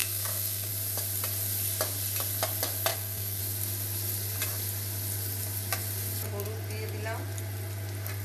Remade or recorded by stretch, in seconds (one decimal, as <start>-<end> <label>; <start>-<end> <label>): 0.0-0.7 remade; 0.7-2.9 recorded; 2.9-3.4 remade; 3.4-8.2 recorded